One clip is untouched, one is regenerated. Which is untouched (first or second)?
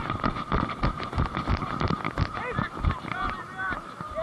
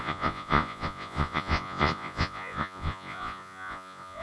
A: first